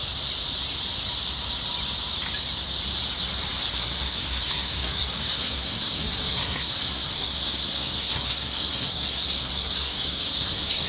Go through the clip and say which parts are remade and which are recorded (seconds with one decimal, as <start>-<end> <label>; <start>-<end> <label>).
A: 0.0-3.7 recorded; 3.7-10.9 remade